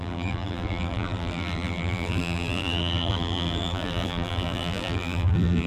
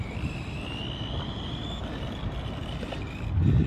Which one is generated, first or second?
first